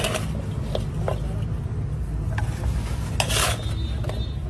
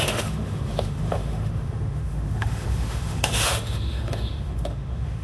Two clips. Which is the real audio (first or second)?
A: first